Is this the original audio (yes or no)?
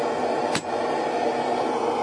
yes